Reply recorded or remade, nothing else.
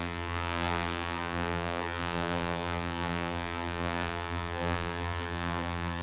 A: remade